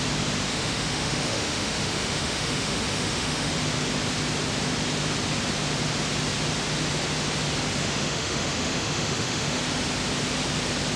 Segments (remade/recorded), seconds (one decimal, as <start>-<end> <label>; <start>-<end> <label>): 0.0-0.5 recorded; 0.5-3.5 remade; 3.5-7.8 recorded; 7.8-9.6 remade; 9.6-11.0 recorded

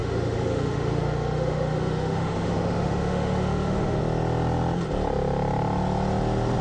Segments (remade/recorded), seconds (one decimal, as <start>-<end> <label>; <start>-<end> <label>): 0.0-4.0 remade; 4.0-6.6 recorded